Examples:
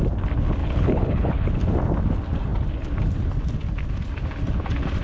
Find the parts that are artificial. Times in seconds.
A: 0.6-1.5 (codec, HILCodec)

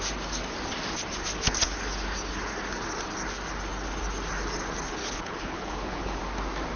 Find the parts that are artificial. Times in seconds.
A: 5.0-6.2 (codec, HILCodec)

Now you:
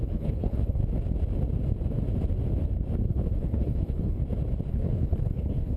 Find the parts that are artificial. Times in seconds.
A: 0.0-0.8 (codec, HILCodec); 3.1-4.2; 4.7-5.8